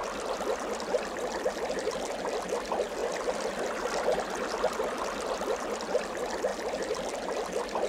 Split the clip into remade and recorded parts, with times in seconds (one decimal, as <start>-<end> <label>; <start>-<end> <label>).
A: 0.0-7.9 recorded